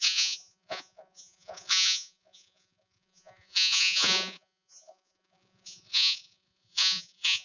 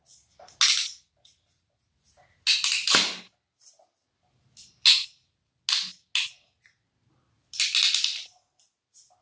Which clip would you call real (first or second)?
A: second